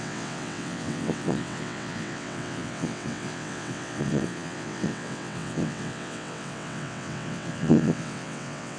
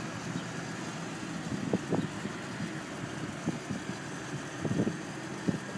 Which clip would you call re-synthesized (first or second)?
first